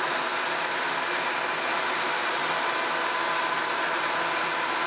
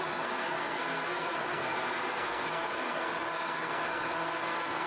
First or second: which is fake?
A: second